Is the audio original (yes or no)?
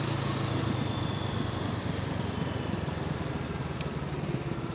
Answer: yes